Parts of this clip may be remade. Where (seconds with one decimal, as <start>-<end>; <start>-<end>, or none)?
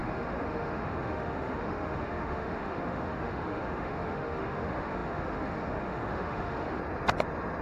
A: 0.0-6.8